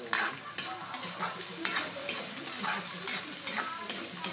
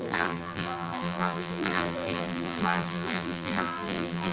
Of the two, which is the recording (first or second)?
first